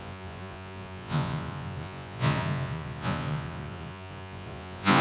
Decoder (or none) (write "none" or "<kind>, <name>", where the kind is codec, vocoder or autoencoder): vocoder, Vocos